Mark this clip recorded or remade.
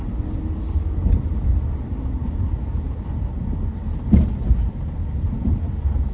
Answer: recorded